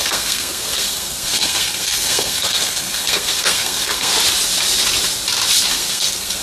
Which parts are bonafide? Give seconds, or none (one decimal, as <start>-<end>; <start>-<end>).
4.1-5.7